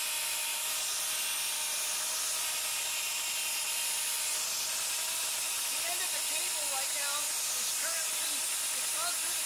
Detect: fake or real real